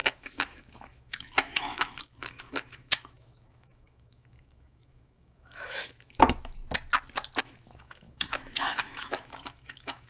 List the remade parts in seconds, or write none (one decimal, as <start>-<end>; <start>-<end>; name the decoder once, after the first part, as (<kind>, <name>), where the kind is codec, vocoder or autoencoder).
0.0-6.6 (autoencoder, DAC-VAE); 7.4-10.1